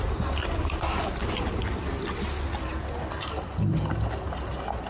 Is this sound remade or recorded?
recorded